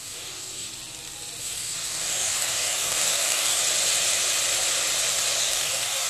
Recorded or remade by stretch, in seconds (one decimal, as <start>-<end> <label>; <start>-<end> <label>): 0.0-0.7 remade; 0.7-1.4 recorded; 1.4-3.6 remade; 3.6-5.4 recorded; 5.4-6.1 remade